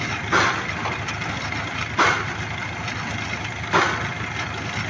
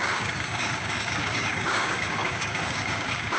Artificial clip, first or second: second